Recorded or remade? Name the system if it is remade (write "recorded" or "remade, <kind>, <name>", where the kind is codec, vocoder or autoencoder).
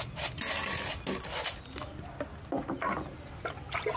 recorded